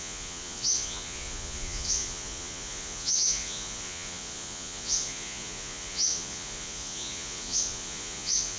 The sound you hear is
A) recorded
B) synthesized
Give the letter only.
B